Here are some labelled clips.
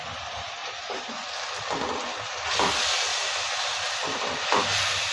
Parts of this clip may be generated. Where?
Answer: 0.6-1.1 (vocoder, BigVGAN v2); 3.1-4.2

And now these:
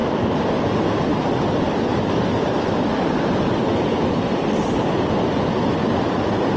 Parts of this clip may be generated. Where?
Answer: 0.0-0.7 (vocoder, BigVGAN v2); 1.1-5.1

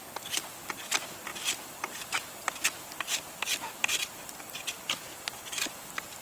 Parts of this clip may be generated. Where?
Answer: none

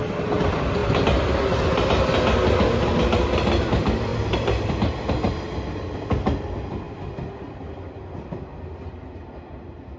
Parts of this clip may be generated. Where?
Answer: 4.1-4.7 (vocoder, BigVGAN v2)

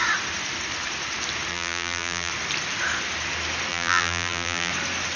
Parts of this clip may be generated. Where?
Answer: 1.5-2.3 (vocoder, BigVGAN v2); 3.7-4.7